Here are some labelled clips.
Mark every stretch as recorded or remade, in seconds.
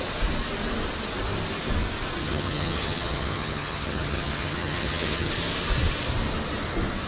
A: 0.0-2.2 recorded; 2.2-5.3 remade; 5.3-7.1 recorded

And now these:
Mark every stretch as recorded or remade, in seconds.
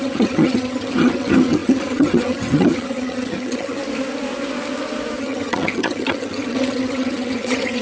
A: 0.0-3.8 remade; 3.8-5.2 recorded; 5.2-7.8 remade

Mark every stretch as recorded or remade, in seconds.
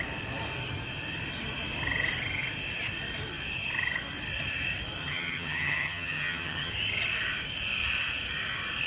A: 0.0-5.0 recorded; 5.0-6.7 remade; 6.7-8.9 recorded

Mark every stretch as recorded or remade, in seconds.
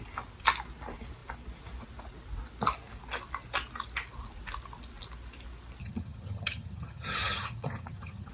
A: 0.0-5.8 recorded; 5.8-8.3 remade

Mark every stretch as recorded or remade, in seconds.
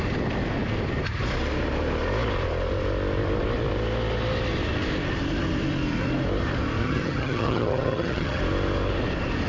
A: 0.0-6.8 recorded; 6.8-8.4 remade; 8.4-9.5 recorded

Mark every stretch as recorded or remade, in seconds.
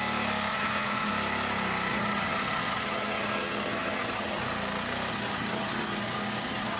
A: 0.0-0.5 recorded; 0.5-1.1 remade; 1.1-1.9 recorded; 1.9-4.4 remade; 4.4-5.1 recorded; 5.1-6.8 remade